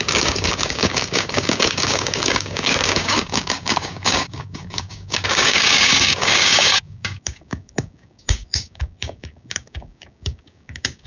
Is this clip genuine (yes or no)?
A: no